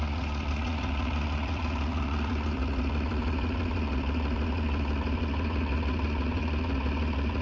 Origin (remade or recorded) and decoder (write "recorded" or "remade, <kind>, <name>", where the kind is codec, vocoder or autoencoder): remade, vocoder, Vocos